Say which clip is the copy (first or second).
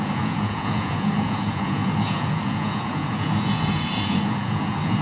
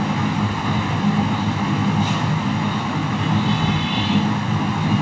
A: first